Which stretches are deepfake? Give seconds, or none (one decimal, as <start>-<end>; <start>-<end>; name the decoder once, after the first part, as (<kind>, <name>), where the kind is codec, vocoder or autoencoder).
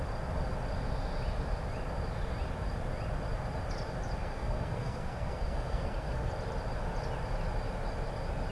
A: 4.2-6.3 (codec, SNAC)